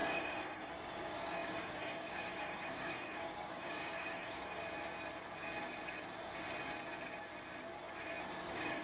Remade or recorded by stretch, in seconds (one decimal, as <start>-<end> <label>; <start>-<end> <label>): 0.0-4.6 remade; 4.6-8.3 recorded; 8.3-8.8 remade